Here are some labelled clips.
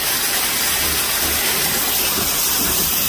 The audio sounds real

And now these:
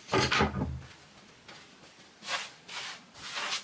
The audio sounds real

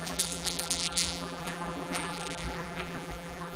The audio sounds fake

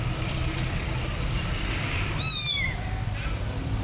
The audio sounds fake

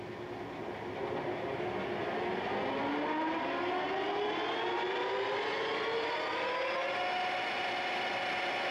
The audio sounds real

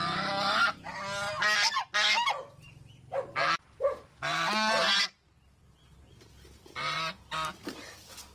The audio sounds real